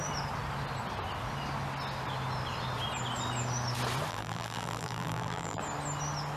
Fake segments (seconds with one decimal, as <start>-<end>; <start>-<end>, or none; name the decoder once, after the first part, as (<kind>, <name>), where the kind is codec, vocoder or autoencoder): 4.1-5.6 (vocoder, BigVGAN v2)